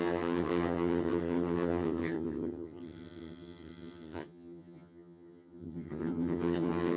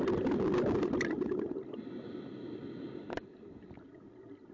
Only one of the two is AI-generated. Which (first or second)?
first